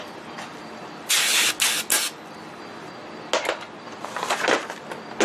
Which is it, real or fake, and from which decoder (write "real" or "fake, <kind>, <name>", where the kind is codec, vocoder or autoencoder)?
real